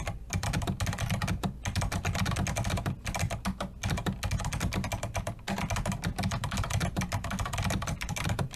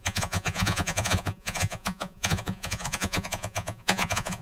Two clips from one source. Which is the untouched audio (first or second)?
first